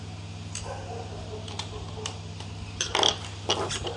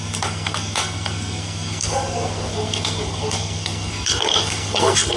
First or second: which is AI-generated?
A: second